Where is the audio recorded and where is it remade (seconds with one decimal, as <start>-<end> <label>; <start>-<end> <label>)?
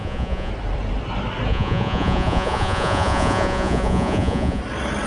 0.0-0.5 remade; 0.5-1.5 recorded; 1.5-4.6 remade; 4.6-5.1 recorded